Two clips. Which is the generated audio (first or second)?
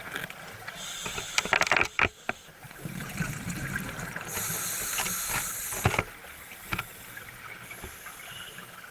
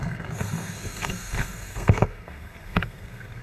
second